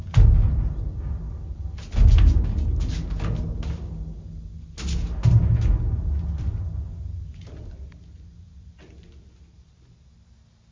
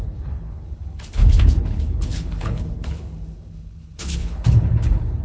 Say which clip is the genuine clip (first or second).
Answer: first